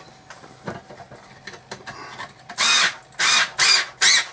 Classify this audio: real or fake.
real